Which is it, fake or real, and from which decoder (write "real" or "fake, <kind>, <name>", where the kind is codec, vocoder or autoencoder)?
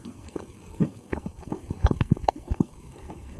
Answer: fake, codec, SNAC